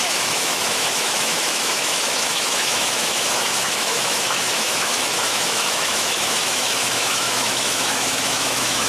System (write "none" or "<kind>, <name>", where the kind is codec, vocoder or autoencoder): autoencoder, DAC-VAE